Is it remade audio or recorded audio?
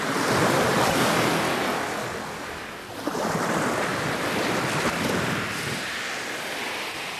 recorded